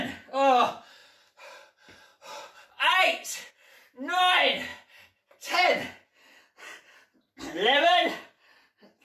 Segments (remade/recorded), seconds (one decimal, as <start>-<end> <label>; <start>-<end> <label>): 0.0-9.0 recorded